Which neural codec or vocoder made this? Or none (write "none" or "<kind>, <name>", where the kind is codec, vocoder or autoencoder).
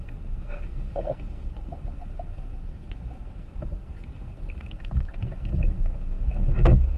codec, SNAC